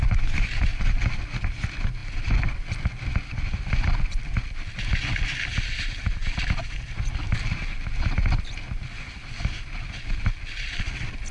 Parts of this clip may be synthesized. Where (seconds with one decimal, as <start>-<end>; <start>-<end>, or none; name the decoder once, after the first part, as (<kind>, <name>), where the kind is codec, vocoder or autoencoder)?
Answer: none